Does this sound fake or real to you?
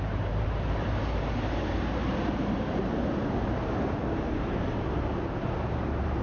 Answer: fake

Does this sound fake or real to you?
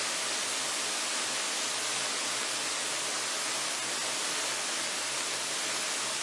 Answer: real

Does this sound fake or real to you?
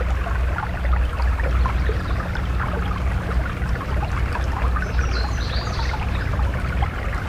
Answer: real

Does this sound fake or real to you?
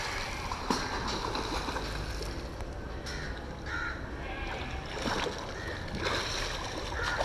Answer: real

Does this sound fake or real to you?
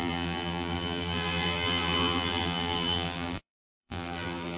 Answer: fake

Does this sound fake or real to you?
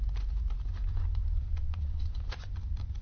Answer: fake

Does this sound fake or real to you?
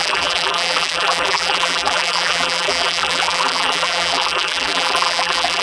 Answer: fake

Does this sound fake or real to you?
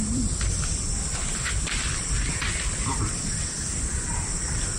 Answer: fake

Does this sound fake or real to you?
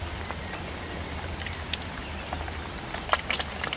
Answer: fake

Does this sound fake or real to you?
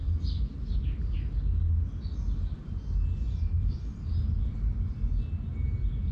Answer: real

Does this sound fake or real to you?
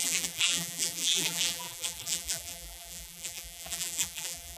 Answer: fake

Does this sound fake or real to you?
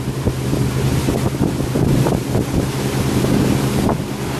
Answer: real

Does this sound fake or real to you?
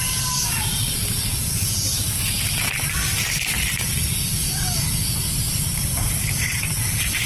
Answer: fake